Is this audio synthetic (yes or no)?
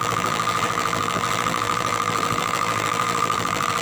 yes